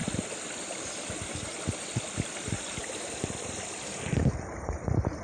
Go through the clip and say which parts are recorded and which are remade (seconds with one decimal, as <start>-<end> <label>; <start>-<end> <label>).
0.0-5.2 recorded